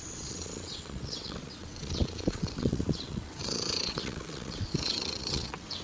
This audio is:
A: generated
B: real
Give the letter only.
A